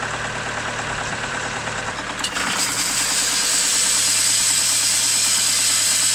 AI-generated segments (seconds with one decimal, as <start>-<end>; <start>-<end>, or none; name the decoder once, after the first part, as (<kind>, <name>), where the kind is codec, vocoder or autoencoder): 1.1-1.8 (vocoder, BigVGAN v2)